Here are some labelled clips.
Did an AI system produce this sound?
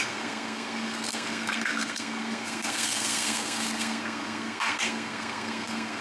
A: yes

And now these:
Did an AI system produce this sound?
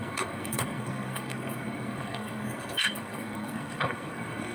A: yes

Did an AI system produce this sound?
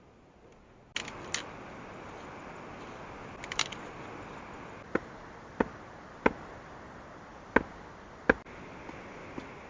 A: no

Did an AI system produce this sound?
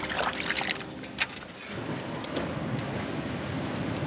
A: no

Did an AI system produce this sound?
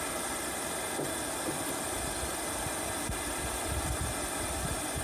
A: no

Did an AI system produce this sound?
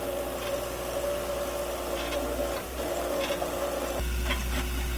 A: no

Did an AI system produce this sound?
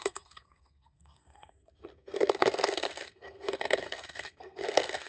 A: yes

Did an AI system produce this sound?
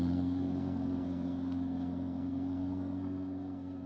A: yes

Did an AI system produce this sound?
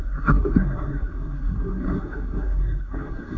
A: yes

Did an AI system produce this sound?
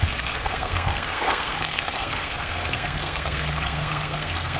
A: yes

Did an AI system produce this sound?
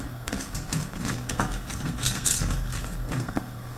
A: yes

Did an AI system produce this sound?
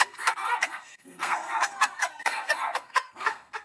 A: yes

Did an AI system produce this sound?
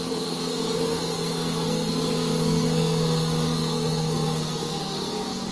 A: yes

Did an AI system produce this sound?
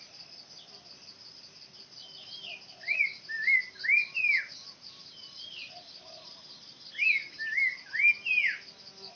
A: no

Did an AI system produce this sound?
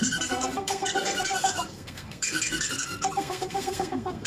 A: yes